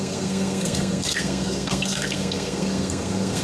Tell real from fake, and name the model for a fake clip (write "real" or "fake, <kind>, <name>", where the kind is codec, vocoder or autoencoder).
fake, codec, SNAC